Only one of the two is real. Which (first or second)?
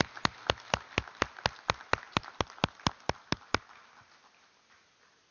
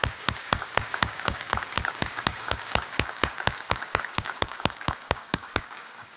first